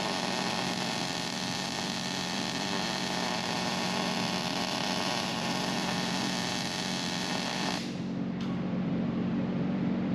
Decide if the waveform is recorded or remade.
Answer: remade